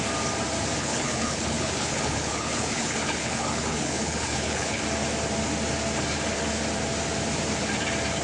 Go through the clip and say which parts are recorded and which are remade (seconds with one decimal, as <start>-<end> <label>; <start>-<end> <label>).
0.0-0.8 recorded; 0.8-4.8 remade; 4.8-8.2 recorded